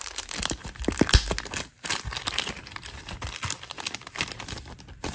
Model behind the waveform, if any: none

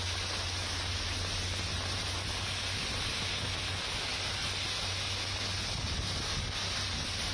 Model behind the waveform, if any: none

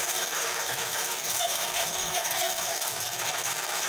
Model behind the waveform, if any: codec, DAC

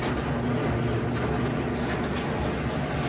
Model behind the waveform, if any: none